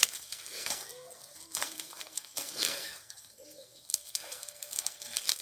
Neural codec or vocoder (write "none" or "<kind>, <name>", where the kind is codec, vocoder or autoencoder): codec, SNAC